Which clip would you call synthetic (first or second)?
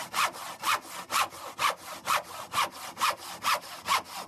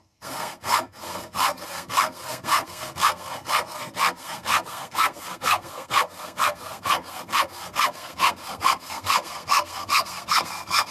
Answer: second